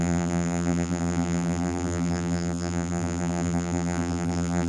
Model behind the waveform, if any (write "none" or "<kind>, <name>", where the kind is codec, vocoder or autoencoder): vocoder, BigVGAN v2